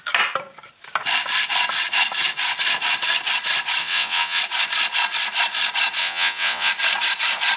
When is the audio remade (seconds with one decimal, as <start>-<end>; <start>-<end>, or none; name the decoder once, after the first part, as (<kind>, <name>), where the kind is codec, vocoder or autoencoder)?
3.8-4.4 (vocoder, WaveNeXt); 6.0-6.7